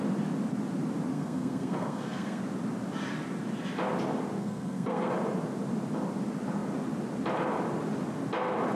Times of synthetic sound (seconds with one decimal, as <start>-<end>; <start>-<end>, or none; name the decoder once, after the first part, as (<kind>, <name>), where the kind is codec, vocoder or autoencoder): 1.1-2.4 (codec, SNAC); 4.4-5.1